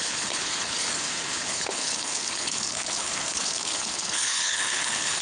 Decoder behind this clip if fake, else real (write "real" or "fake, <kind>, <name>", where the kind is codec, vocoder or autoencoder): fake, codec, HILCodec